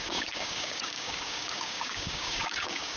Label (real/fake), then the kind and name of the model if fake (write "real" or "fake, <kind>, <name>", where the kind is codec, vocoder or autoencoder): fake, codec, DAC